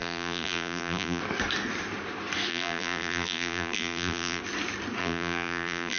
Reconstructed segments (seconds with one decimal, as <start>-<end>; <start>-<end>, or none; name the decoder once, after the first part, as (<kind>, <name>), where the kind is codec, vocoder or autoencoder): 0.0-1.2 (vocoder, BigVGAN v2); 2.5-4.4; 5.0-6.0